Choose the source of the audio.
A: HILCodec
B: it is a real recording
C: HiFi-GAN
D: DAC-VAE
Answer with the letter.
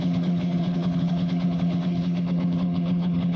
A